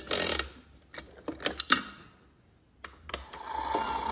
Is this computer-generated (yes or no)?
no